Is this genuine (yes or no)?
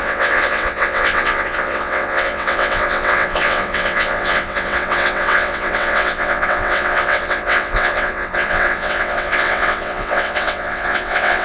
no